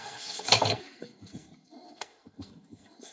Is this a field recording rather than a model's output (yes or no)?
no